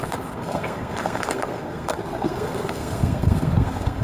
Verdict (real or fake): fake